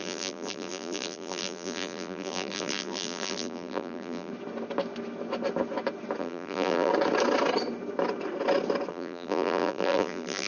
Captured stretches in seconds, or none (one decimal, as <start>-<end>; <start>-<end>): 4.3-6.2; 6.9-8.9